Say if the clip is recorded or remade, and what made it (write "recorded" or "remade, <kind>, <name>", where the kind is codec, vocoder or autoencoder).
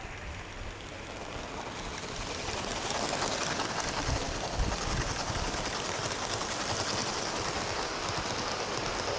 recorded